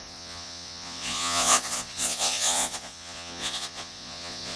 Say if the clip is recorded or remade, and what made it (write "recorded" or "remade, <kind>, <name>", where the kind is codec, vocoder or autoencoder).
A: remade, vocoder, Vocos